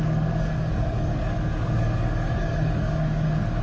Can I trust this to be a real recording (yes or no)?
no